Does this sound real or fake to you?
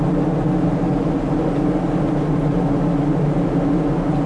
real